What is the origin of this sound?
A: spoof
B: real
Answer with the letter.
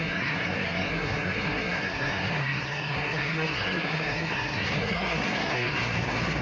A